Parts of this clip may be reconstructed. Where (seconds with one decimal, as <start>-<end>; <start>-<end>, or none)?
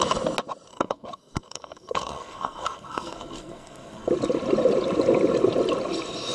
0.7-4.1